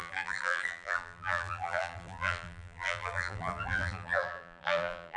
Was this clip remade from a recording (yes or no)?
yes